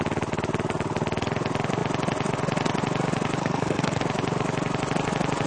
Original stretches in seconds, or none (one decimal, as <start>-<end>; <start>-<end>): 0.0-3.4; 4.0-5.5